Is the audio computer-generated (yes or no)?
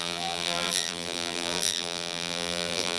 yes